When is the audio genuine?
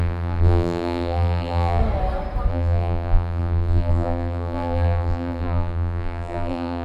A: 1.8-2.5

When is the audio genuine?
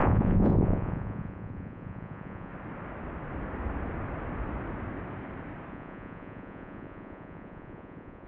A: 2.5-5.7